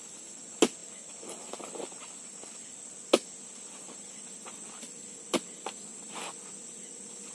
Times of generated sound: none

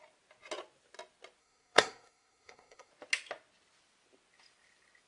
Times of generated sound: 1.4-2.9 (codec, SNAC)

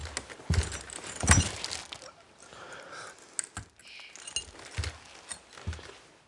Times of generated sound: none

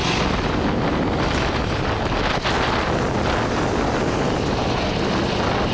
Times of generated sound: none

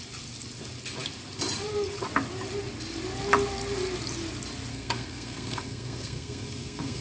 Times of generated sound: 4.7-7.0 (codec, SNAC)

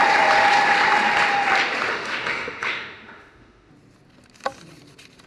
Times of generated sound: 1.9-3.7 (autoencoder, DAC-VAE)